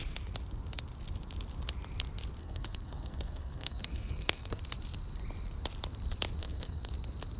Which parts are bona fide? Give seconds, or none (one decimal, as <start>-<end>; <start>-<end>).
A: 0.0-2.4; 4.6-6.4; 6.9-7.4